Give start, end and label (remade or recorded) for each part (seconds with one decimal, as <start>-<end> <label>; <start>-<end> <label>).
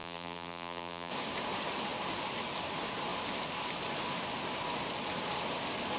0.0-1.1 remade; 1.1-6.0 recorded